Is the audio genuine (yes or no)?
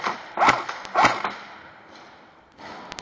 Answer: yes